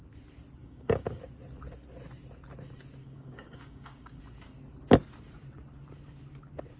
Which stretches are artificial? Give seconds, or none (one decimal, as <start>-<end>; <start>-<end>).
0.6-1.2; 3.0-4.2

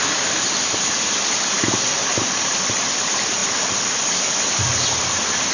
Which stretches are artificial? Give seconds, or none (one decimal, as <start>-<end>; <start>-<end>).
none

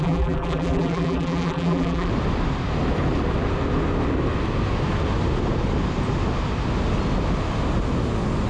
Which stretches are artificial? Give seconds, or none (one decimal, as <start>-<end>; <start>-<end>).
0.0-2.1